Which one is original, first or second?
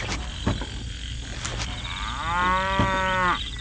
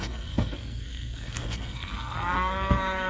first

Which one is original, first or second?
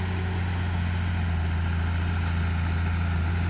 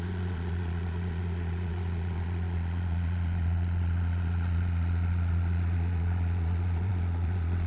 first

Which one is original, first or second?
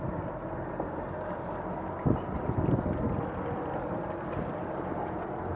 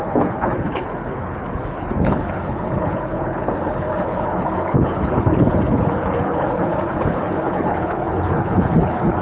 first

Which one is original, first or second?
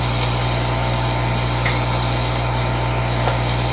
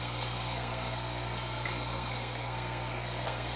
first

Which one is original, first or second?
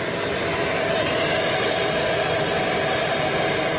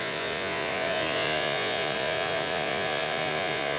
first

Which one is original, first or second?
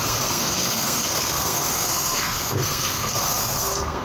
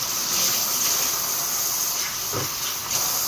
second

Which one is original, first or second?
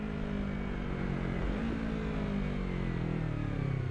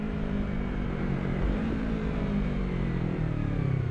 first